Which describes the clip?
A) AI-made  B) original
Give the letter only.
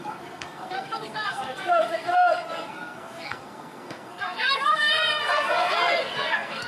A